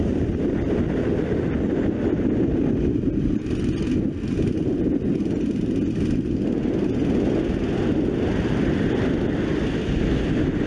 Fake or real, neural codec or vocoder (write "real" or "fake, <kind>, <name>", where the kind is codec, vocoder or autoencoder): real